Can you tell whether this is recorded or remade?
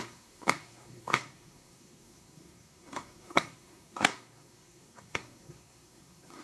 remade